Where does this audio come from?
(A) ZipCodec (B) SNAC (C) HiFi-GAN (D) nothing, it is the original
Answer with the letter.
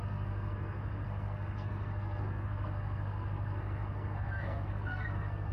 B